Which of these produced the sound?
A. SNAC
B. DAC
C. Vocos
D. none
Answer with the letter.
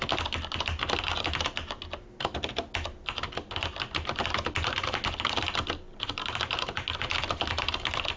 D